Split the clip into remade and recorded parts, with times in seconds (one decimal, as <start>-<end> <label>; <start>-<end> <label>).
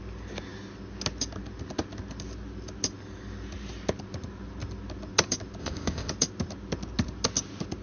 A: 0.0-5.6 recorded; 5.6-6.1 remade; 6.1-7.8 recorded